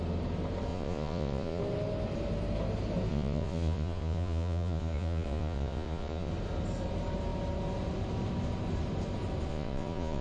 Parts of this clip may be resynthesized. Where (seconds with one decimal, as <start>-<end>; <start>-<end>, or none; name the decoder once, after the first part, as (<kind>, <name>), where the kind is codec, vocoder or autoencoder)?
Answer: 0.7-1.6 (vocoder, Vocos); 3.1-6.3; 9.5-10.2